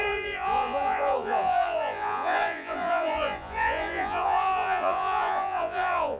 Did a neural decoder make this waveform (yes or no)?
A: yes